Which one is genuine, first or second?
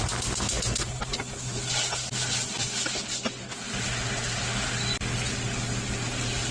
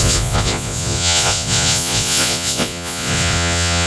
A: first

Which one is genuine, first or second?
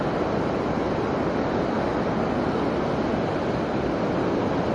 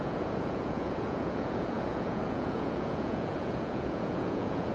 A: first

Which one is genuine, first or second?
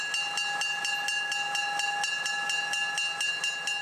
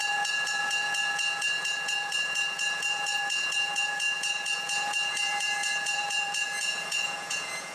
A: first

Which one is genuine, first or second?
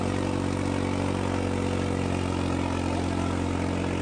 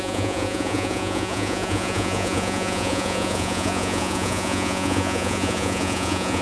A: first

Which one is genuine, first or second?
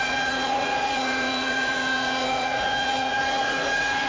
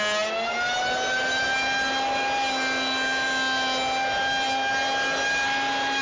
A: second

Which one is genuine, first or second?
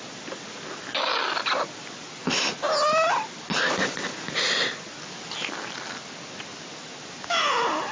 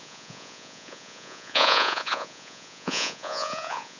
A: first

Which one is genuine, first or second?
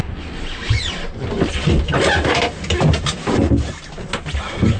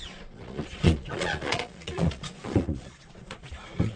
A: first